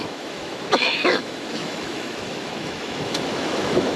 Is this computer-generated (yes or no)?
yes